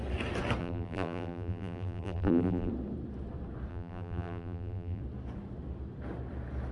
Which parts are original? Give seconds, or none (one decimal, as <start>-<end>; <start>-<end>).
0.0-0.6; 2.7-3.7; 5.0-6.7